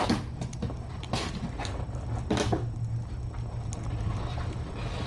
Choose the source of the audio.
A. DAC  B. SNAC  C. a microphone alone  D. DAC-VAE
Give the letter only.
C